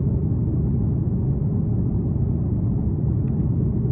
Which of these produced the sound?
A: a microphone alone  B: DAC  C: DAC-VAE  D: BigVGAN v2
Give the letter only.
D